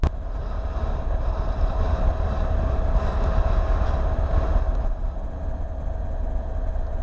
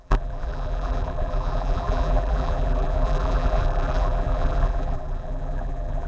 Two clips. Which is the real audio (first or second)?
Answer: first